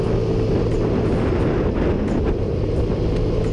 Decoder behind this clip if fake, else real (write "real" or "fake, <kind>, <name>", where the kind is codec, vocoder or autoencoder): real